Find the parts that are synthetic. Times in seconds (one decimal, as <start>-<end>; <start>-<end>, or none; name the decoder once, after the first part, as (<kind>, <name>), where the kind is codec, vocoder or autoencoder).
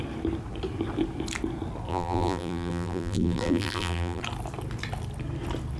1.9-4.2 (vocoder, BigVGAN v2)